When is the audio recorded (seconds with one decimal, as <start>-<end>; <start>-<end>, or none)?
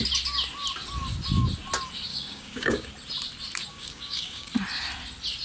0.0-2.1; 2.9-3.7; 4.5-5.4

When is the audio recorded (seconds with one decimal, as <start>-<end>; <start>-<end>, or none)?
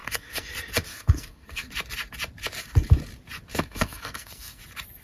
0.5-0.9; 1.7-3.5; 4.6-5.0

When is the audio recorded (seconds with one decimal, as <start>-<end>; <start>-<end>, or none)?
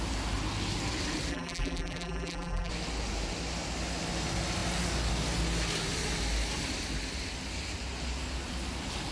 0.0-1.3; 2.7-9.1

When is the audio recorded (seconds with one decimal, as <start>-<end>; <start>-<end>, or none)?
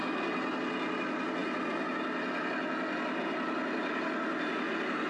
0.0-5.1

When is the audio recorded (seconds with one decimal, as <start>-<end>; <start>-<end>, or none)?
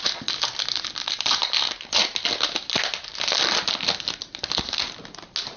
0.0-5.6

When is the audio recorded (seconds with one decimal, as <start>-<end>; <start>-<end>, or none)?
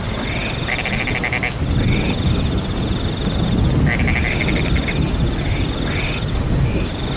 0.0-7.2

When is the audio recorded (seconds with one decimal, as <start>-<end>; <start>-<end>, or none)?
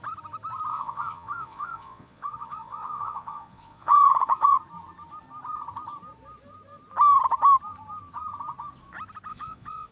0.0-0.7; 4.6-9.3